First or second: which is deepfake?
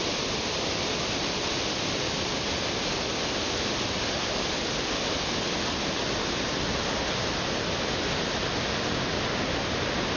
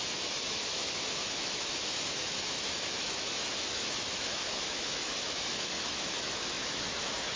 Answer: second